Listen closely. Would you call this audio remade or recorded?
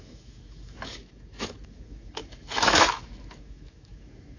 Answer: remade